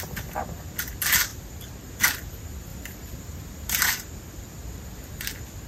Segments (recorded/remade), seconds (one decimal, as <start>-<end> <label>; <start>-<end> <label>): 0.0-2.7 recorded; 2.7-4.0 remade; 4.0-5.7 recorded